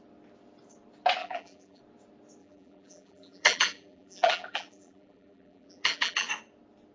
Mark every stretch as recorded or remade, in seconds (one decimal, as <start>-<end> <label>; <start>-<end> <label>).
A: 0.0-1.2 recorded; 1.2-1.8 remade; 1.8-2.4 recorded; 2.4-6.3 remade; 6.3-6.9 recorded